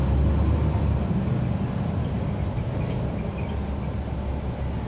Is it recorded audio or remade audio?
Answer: recorded